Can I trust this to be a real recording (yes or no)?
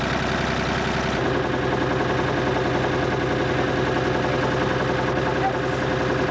yes